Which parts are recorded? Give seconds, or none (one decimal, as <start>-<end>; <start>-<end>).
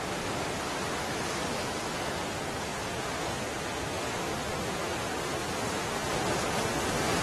0.0-7.2